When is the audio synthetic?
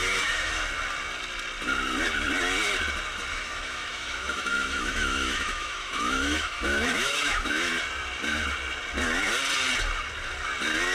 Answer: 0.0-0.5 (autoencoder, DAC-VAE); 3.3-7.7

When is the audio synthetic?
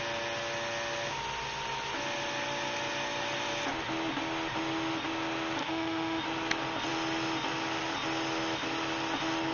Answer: 5.6-6.2 (autoencoder, DAC-VAE)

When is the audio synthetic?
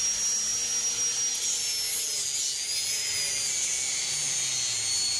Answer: none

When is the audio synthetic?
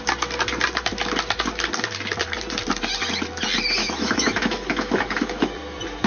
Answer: 3.8-5.5 (autoencoder, DAC-VAE)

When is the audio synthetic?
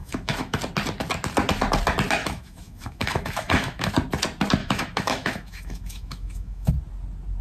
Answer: 0.0-0.6 (autoencoder, DAC-VAE); 2.2-3.9; 4.6-6.7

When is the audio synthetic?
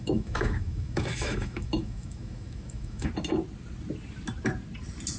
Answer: 0.0-3.1 (autoencoder, DAC-VAE)